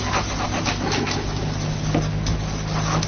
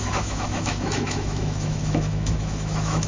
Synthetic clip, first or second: second